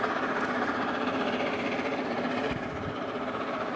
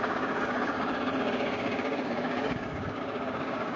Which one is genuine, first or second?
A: first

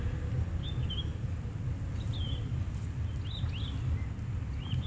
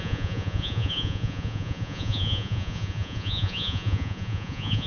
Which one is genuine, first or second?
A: first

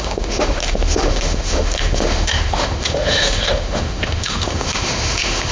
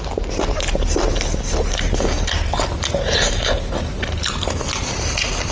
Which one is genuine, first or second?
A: second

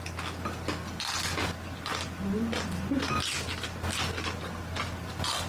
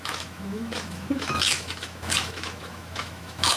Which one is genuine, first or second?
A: first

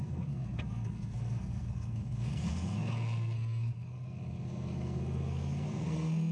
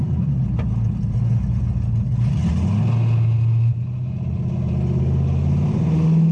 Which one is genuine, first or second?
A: second